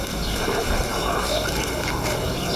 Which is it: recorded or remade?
remade